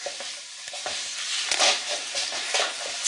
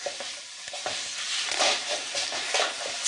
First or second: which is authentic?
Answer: first